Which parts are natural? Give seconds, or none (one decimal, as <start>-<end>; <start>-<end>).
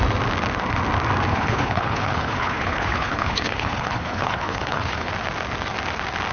0.0-1.3; 5.1-6.3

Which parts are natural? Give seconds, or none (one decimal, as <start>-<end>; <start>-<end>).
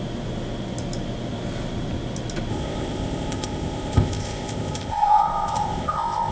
0.0-2.5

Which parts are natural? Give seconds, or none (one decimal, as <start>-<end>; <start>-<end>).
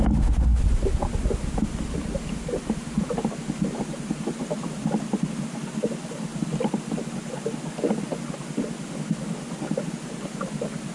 0.0-10.9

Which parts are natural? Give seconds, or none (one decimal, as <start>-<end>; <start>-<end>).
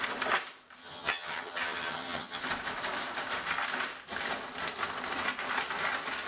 0.0-0.8; 2.4-6.3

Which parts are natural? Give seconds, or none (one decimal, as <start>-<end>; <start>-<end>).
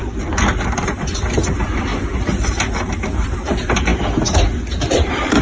0.0-5.4